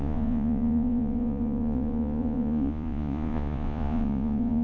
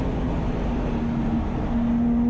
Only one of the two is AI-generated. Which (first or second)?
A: first